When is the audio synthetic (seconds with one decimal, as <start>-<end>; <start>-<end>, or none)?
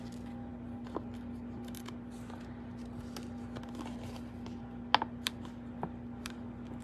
none